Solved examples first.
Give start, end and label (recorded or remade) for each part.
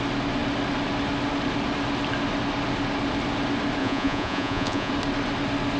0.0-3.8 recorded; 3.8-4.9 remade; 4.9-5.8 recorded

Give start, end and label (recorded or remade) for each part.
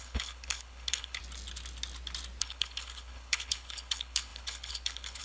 0.0-1.2 remade; 1.2-2.4 recorded; 2.4-5.2 remade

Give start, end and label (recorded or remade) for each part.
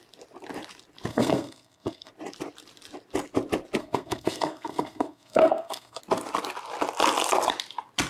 0.0-1.1 recorded; 1.1-2.1 remade; 2.1-3.8 recorded; 3.8-6.0 remade; 6.0-8.1 recorded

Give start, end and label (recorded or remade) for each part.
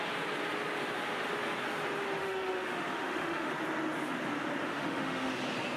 0.0-2.2 recorded; 2.2-3.5 remade; 3.5-4.7 recorded; 4.7-5.3 remade; 5.3-5.8 recorded